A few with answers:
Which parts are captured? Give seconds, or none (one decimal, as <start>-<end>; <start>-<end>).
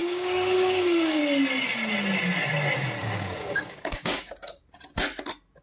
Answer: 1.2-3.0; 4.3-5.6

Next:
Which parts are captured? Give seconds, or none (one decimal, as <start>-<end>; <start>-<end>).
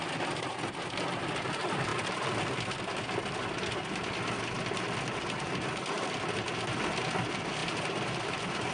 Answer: 0.0-8.7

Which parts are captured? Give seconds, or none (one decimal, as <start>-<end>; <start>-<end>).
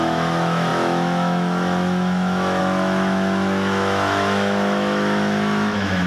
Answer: none